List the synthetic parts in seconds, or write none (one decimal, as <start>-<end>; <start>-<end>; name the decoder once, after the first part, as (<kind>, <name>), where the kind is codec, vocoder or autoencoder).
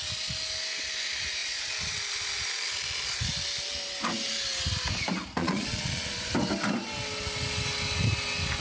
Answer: 5.4-6.3 (vocoder, Vocos)